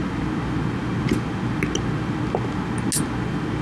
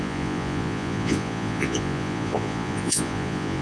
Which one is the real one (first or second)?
first